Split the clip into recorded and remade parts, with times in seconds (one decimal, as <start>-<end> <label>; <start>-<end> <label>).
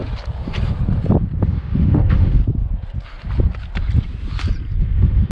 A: 0.0-1.4 recorded; 1.4-2.4 remade; 2.4-4.8 recorded; 4.8-5.3 remade